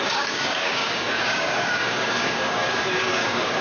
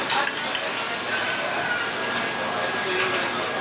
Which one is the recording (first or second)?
second